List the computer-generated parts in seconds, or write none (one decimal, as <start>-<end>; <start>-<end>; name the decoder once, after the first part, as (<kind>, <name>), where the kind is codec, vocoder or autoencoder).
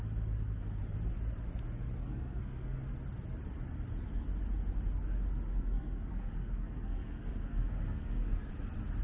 2.0-2.8 (codec, SNAC); 5.5-8.5